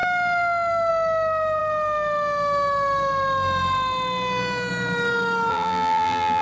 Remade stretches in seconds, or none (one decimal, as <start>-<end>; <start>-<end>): 5.5-6.4